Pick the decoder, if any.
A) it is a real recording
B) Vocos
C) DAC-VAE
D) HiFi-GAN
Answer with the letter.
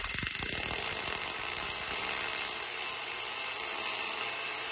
A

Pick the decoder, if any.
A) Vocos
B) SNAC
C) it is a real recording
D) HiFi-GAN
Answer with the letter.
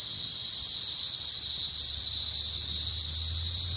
C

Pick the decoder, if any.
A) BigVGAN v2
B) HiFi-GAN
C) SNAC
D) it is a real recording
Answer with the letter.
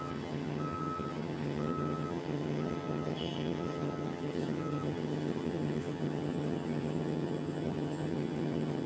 B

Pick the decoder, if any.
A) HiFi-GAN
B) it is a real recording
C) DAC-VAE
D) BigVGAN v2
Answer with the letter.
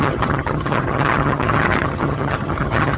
A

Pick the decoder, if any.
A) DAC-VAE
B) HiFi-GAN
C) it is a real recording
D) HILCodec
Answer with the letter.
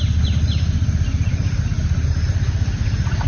C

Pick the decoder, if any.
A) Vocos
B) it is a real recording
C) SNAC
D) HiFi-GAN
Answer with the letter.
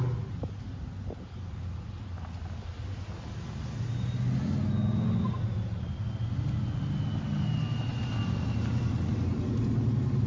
B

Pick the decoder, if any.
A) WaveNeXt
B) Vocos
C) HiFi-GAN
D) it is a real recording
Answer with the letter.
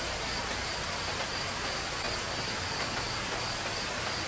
D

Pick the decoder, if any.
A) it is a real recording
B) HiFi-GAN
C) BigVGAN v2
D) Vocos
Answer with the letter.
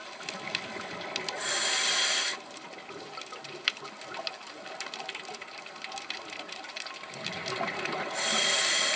A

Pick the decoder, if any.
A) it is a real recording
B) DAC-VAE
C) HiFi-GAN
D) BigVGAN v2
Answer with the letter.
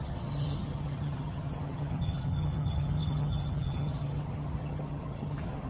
C